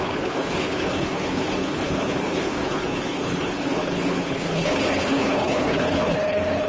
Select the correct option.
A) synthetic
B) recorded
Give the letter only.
A